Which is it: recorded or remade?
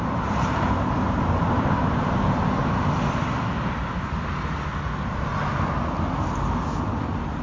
recorded